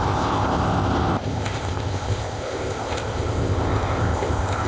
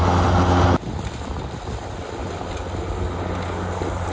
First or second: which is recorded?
second